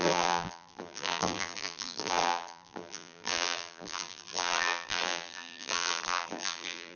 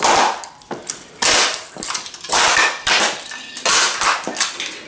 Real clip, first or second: second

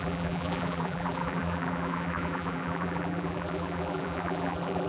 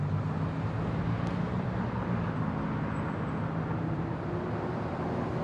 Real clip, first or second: second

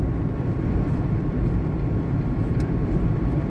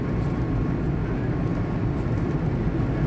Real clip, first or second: second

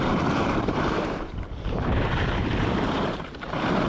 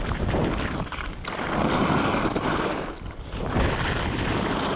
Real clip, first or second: second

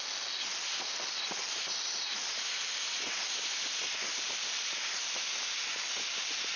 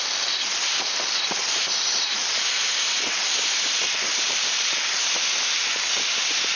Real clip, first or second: first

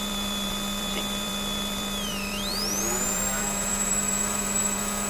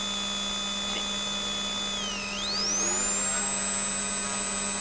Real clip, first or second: second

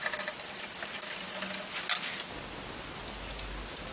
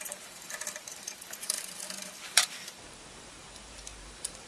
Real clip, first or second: first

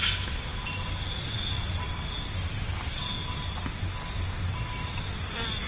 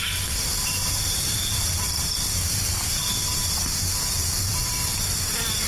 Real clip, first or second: first